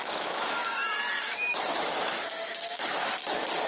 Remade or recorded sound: remade